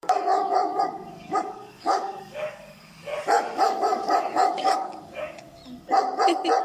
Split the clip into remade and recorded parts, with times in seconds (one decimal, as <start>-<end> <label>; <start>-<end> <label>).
0.0-3.1 remade; 3.1-3.7 recorded; 3.7-5.6 remade; 5.6-6.6 recorded